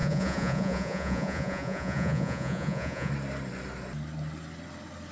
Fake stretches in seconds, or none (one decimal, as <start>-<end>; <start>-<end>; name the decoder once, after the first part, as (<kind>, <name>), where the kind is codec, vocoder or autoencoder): 0.0-3.1 (vocoder, Vocos)